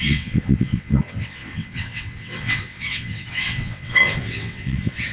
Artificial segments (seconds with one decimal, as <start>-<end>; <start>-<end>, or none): 0.0-5.1